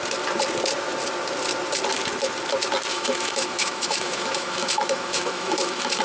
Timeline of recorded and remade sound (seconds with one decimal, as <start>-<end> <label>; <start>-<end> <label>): 0.0-2.9 recorded; 2.9-6.0 remade